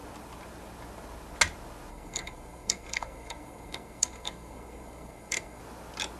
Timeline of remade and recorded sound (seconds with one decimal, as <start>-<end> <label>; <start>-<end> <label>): 0.0-1.9 recorded; 1.9-5.6 remade; 5.6-6.2 recorded